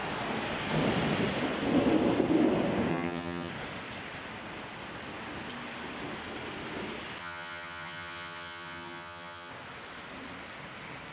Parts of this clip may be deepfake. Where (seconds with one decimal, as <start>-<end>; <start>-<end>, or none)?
2.9-3.5; 7.2-9.5